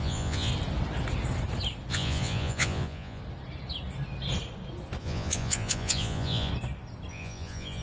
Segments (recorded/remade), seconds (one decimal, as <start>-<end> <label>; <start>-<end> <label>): 0.0-0.5 remade; 0.5-1.9 recorded; 1.9-3.2 remade; 3.2-5.0 recorded; 5.0-6.5 remade; 6.5-7.1 recorded; 7.1-7.8 remade